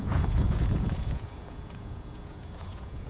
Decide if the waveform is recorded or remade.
remade